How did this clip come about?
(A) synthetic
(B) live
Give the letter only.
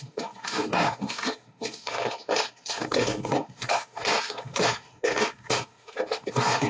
A